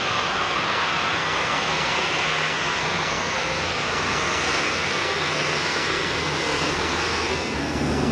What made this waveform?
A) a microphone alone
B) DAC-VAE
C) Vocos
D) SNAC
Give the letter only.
D